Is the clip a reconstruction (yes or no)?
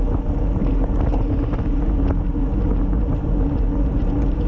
no